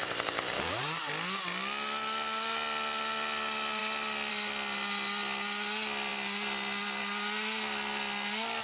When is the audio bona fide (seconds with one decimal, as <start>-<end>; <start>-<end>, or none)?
1.1-8.6